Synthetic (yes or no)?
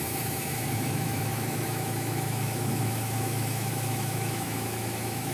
yes